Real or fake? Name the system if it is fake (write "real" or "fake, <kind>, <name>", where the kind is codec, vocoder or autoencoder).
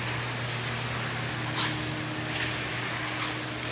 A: real